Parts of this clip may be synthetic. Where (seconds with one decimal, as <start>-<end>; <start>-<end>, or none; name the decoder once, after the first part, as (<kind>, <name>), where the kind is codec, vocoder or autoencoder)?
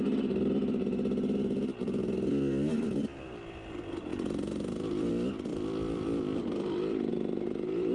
4.1-5.1 (vocoder, BigVGAN v2); 5.5-7.1